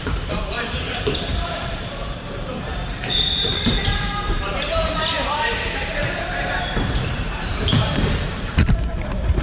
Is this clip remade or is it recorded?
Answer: remade